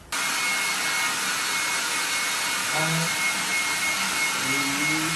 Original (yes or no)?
yes